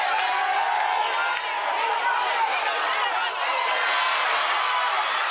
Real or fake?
real